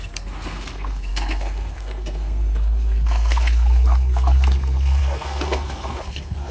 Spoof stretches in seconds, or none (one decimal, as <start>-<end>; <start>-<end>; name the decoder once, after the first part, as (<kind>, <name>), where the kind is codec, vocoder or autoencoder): 0.0-6.5 (codec, SNAC)